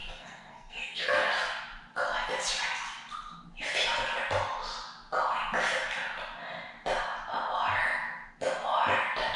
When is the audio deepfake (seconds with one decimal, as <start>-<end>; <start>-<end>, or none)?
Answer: 0.0-1.3